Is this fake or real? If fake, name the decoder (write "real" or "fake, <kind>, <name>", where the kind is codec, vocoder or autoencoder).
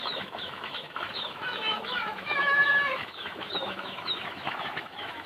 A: fake, autoencoder, DAC-VAE